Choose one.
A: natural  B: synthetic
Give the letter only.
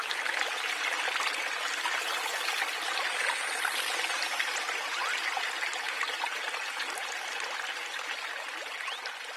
A